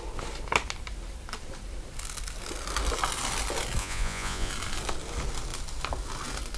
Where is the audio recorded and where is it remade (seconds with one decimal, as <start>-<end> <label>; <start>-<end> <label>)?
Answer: 0.0-3.8 recorded; 3.8-4.5 remade; 4.5-6.6 recorded